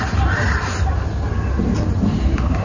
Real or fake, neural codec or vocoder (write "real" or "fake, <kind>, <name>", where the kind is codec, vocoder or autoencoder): real